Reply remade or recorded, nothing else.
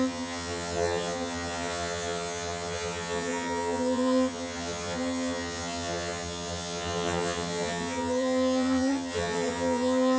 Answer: remade